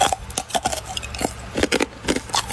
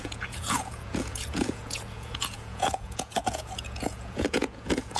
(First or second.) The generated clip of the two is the second